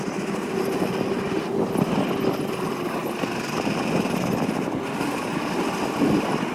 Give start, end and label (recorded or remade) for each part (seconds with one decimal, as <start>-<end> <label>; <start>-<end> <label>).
0.0-6.5 recorded